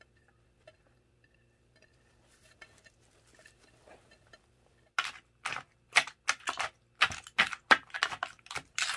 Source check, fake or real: real